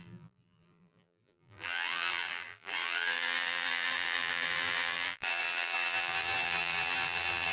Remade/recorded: remade